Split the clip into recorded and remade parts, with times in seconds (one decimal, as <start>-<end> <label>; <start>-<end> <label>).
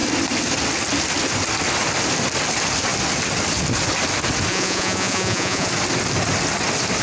0.0-4.5 recorded; 4.5-5.7 remade; 5.7-7.0 recorded